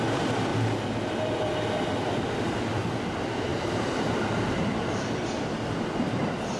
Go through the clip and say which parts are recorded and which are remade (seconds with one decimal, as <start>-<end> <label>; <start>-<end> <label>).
0.0-0.5 remade; 0.5-2.4 recorded; 2.4-6.6 remade